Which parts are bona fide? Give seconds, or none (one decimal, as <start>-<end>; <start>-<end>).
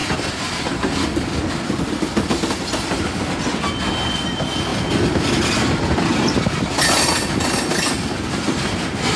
2.3-4.7; 7.3-9.2